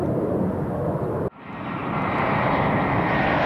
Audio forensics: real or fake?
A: real